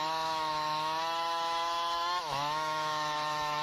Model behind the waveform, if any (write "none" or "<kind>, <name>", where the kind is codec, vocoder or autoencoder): autoencoder, DAC-VAE